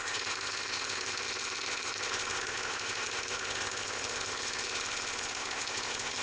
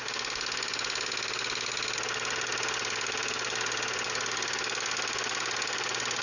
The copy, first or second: first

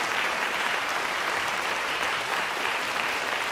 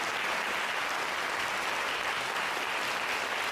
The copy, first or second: first